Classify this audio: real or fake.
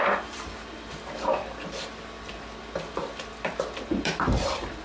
fake